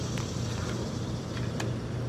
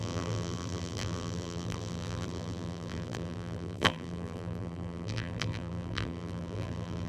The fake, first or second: second